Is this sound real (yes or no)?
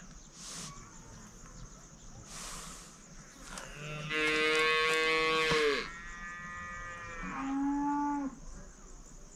yes